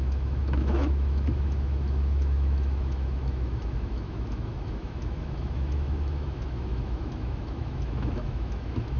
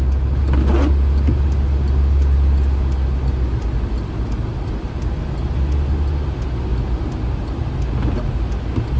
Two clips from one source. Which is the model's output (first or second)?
first